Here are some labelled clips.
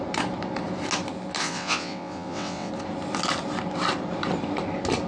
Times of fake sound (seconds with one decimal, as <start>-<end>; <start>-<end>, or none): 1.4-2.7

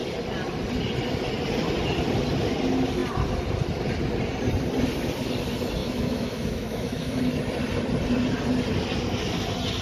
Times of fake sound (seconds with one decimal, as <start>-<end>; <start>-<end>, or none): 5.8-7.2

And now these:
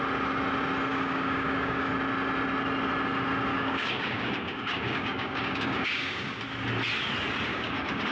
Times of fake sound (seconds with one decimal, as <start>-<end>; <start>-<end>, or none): 0.9-1.9; 3.5-6.4; 7.5-8.1